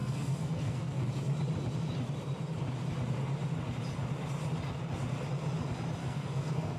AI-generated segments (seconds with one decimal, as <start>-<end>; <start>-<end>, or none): 0.0-1.1; 6.0-6.8